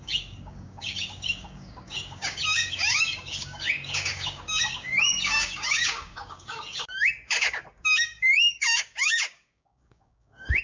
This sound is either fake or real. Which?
fake